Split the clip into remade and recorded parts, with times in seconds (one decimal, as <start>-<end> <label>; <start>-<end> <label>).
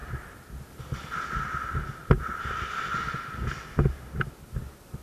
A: 0.0-5.0 recorded